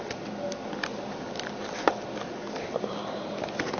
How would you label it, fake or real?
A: real